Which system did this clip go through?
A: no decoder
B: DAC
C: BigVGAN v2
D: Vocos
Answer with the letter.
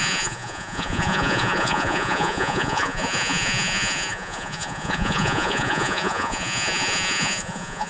D